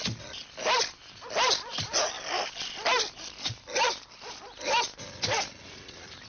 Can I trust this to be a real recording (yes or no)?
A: yes